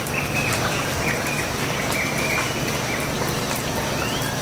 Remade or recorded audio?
recorded